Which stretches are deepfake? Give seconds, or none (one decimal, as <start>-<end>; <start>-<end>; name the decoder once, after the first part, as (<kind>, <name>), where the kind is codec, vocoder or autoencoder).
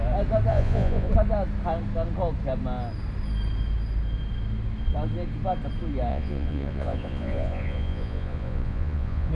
0.5-1.1 (vocoder, Vocos); 6.1-9.3